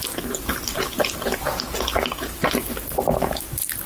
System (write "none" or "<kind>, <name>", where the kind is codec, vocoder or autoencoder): none